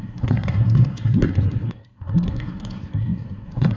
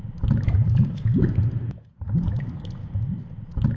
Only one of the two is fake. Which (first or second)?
first